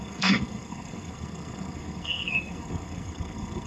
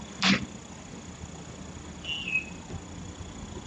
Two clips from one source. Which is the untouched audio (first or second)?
second